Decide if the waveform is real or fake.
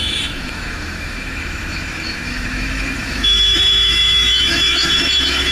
fake